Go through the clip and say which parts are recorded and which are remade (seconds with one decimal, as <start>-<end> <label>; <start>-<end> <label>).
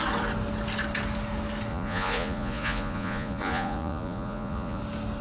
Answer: 0.0-1.7 recorded; 1.7-4.8 remade; 4.8-5.2 recorded